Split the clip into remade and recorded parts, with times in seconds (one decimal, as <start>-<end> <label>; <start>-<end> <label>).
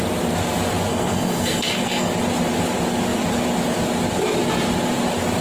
0.0-0.9 recorded; 0.9-2.1 remade; 2.1-5.4 recorded